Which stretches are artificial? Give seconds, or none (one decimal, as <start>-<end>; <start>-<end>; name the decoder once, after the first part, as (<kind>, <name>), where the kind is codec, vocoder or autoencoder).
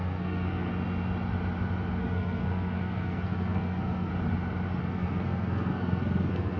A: 0.0-0.7 (codec, SNAC); 2.0-4.1; 4.8-6.6